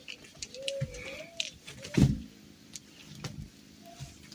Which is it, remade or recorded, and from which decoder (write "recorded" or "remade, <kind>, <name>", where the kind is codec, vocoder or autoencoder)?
recorded